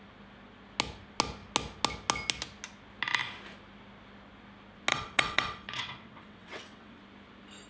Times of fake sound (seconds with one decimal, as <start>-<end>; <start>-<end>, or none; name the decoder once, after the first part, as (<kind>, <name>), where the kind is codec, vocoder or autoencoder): 4.9-7.0 (vocoder, WaveNeXt)